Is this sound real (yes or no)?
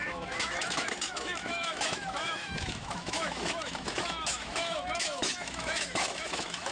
no